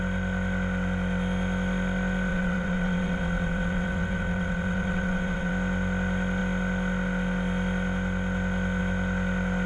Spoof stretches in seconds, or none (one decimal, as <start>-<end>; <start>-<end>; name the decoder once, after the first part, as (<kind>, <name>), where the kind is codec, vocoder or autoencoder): 2.3-5.5 (vocoder, WaveNeXt)